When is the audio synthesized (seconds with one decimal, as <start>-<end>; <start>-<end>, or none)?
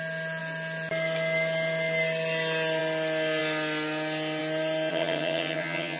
4.9-6.0